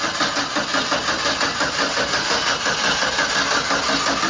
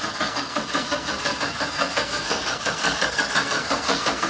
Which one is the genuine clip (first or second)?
first